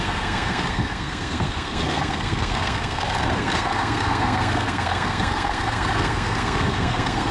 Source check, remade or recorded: remade